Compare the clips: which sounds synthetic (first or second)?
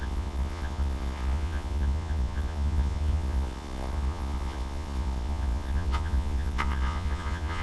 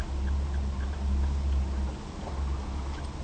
first